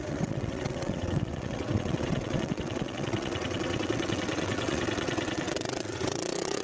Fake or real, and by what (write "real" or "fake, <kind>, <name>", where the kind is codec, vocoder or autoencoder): fake, vocoder, WaveNeXt